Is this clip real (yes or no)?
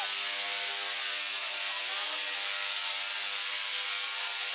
yes